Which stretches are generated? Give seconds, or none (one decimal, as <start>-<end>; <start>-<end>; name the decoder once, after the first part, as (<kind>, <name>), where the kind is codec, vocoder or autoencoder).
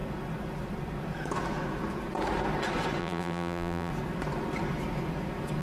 3.0-3.9 (vocoder, BigVGAN v2)